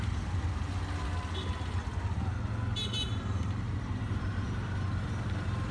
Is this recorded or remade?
recorded